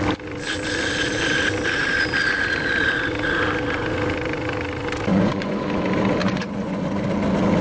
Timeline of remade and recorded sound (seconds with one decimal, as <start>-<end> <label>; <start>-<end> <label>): 0.0-5.1 recorded; 5.1-5.7 remade; 5.7-6.2 recorded; 6.2-6.8 remade; 6.8-7.6 recorded